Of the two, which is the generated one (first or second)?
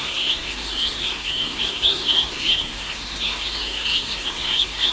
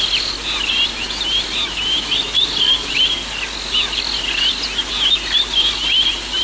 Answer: first